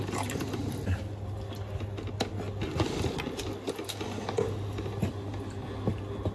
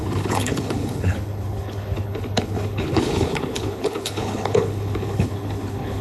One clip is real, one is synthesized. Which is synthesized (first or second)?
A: second